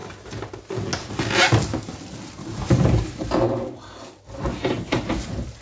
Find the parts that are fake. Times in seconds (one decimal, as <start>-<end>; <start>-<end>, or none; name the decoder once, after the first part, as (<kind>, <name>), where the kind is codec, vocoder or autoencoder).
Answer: none